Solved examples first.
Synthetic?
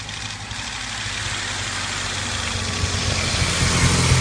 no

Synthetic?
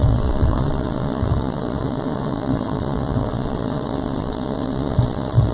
yes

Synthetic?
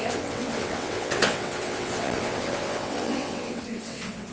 yes